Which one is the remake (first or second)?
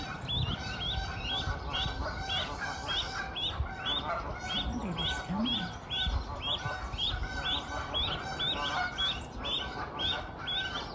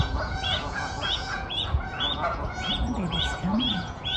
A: second